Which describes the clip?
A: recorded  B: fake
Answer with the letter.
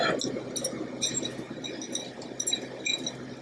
A